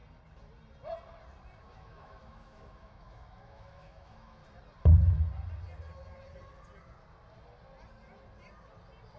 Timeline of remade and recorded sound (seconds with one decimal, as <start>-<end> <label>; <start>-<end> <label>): 0.0-1.6 recorded; 1.6-4.4 remade; 4.4-9.2 recorded